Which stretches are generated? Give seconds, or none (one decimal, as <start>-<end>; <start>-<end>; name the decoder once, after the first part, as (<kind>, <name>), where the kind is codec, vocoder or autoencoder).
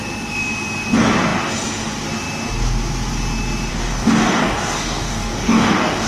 3.7-6.1 (codec, DAC)